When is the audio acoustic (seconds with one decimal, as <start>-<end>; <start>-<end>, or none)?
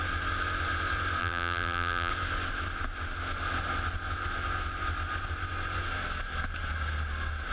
0.0-1.2; 2.1-7.5